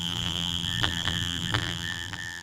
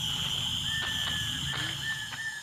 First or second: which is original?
second